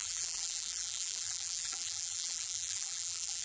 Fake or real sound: fake